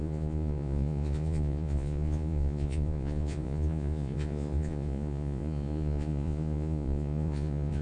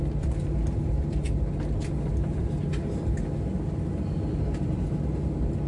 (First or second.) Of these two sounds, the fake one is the first